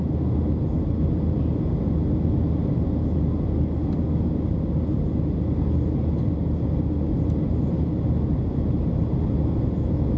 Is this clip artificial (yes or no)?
no